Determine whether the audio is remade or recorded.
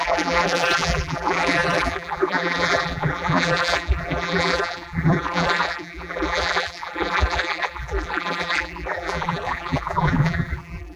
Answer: remade